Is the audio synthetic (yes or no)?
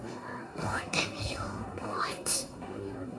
yes